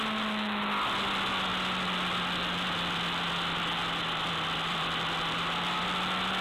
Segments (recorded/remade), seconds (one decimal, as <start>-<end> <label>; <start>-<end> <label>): 0.0-6.4 recorded

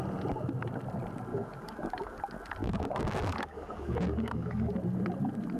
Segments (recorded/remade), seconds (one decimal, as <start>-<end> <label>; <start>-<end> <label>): 0.0-1.3 recorded; 1.3-2.2 remade; 2.2-2.6 recorded; 2.6-4.7 remade; 4.7-5.6 recorded

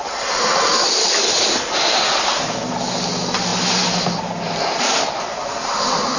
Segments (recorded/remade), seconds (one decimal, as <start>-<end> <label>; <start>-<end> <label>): 0.0-6.2 recorded

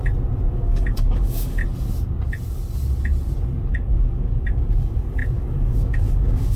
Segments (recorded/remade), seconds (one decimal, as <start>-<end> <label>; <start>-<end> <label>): 0.0-0.5 recorded; 0.5-1.6 remade; 1.6-3.7 recorded; 3.7-6.6 remade